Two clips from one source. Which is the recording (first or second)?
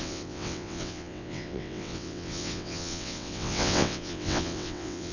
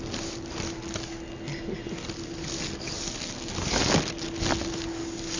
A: second